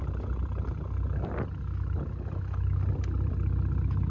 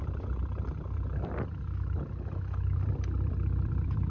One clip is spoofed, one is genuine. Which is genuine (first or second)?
first